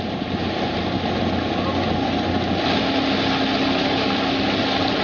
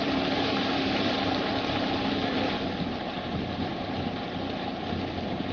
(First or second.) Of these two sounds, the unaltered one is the first